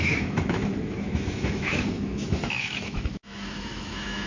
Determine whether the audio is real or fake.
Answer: fake